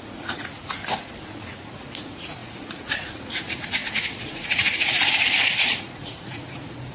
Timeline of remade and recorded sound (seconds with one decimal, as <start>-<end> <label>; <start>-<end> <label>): 0.0-0.8 remade; 0.8-1.5 recorded; 1.5-6.9 remade